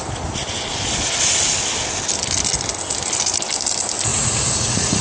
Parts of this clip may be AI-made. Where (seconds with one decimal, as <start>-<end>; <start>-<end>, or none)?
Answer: 4.1-5.0